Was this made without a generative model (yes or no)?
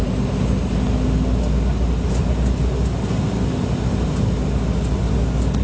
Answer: yes